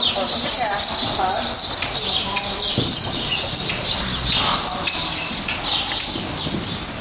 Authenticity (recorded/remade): recorded